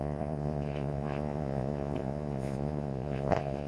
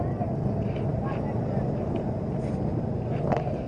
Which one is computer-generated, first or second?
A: first